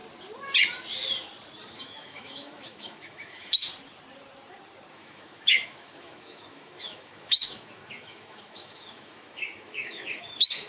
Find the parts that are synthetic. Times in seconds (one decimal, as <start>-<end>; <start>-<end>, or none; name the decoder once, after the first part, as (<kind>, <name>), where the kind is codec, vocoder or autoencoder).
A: 1.7-3.7 (autoencoder, DAC-VAE); 4.9-10.7